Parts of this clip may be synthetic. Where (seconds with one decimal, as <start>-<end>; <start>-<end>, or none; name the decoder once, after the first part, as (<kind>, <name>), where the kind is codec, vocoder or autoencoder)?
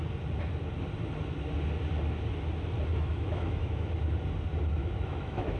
2.9-3.9 (autoencoder, DAC-VAE); 4.8-5.6